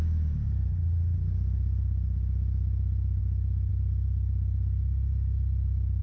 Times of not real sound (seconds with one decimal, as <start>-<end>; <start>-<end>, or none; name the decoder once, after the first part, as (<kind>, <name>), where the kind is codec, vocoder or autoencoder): none